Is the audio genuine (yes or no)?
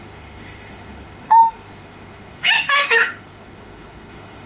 no